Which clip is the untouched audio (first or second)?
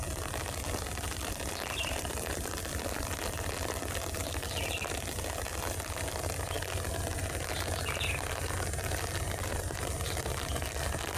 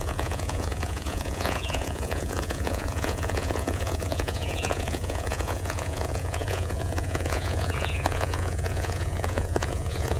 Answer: first